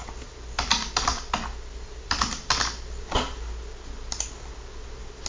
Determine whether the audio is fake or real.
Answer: real